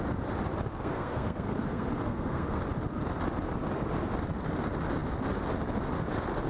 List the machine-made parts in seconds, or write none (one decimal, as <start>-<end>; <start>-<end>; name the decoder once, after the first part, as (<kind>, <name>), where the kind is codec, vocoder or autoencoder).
0.7-2.6 (codec, SNAC)